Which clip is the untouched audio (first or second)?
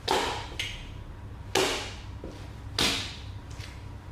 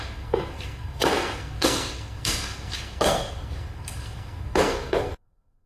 first